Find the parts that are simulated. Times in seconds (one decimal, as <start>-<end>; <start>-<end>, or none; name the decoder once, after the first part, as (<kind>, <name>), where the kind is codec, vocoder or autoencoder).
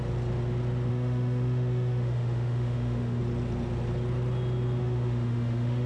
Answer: 0.9-3.2 (autoencoder, DAC-VAE); 4.8-5.9